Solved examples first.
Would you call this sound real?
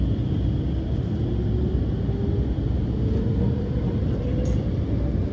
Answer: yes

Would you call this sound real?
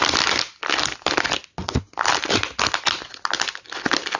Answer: yes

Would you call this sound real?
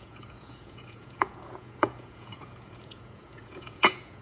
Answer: no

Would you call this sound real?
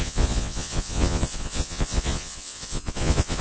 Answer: no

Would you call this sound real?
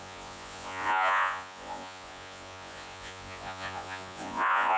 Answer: no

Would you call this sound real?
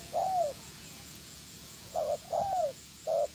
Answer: no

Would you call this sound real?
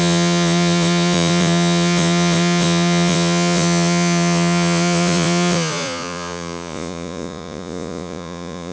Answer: no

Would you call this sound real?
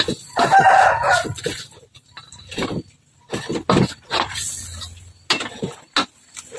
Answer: yes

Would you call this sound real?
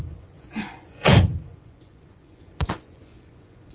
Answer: no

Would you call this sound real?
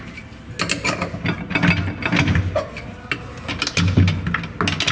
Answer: yes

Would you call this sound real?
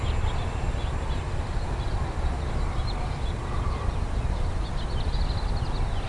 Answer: yes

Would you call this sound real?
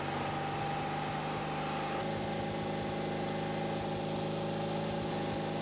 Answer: yes